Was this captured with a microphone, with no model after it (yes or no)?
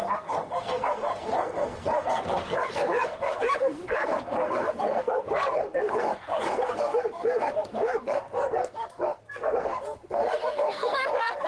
no